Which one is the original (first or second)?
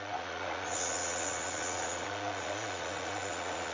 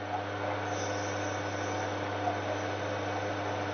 second